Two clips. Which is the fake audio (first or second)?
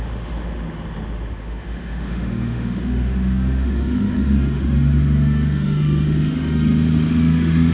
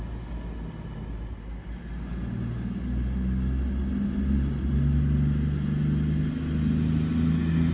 first